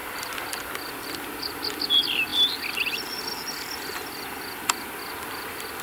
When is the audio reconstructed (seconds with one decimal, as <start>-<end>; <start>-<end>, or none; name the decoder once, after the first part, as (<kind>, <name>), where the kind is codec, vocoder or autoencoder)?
none